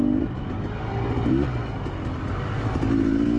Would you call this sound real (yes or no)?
yes